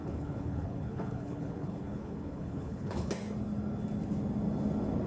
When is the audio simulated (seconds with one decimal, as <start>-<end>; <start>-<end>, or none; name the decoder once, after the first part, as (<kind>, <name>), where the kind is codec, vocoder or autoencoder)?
0.0-3.1 (codec, HILCodec)